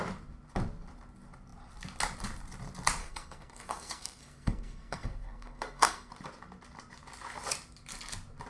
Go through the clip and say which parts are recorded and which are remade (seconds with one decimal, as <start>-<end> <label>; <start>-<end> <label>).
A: 0.0-3.0 recorded; 3.0-6.1 remade; 6.1-8.5 recorded